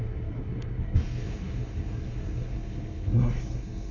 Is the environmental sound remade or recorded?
remade